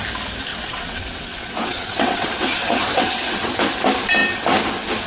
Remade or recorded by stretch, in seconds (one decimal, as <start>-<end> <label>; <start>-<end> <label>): 0.0-0.5 recorded; 0.5-3.6 remade; 3.6-5.1 recorded